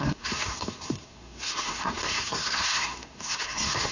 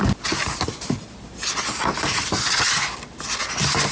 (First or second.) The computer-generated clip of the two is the first